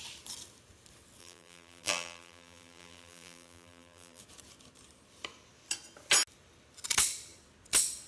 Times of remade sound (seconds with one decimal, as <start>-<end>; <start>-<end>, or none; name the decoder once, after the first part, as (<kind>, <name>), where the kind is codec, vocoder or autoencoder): 1.2-4.2 (vocoder, BigVGAN v2)